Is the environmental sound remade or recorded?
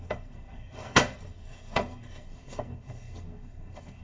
remade